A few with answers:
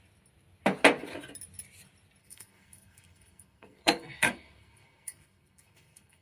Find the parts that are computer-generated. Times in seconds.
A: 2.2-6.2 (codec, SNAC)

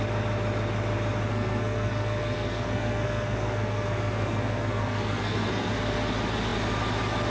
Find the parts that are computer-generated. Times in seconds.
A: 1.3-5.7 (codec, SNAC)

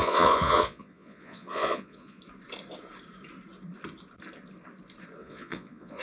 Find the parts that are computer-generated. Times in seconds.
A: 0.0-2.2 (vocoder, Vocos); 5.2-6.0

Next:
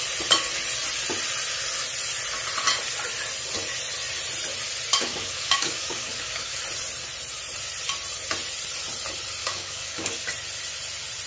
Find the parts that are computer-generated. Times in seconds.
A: 4.9-6.6 (codec, DAC); 9.4-10.3